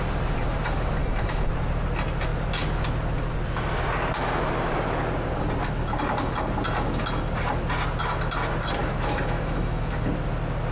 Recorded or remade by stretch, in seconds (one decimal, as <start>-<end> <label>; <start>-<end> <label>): 0.0-1.0 recorded; 1.0-1.5 remade; 1.5-8.8 recorded; 8.8-9.9 remade; 9.9-10.7 recorded